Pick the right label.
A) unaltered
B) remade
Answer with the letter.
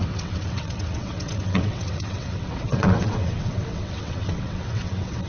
B